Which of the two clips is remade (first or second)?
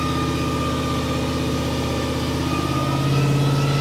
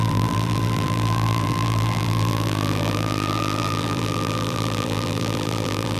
second